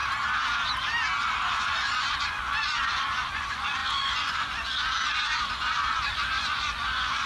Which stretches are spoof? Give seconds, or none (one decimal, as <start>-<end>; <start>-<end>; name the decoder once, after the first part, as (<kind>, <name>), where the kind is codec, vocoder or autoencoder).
1.5-7.3 (vocoder, Vocos)